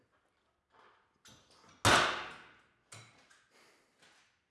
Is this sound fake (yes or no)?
no